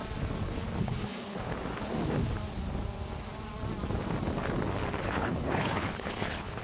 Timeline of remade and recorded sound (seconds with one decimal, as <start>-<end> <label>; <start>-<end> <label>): 0.0-0.8 recorded; 0.8-1.5 remade; 1.5-5.0 recorded; 5.0-6.6 remade